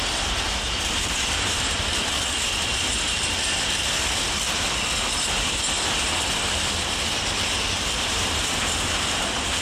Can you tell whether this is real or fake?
fake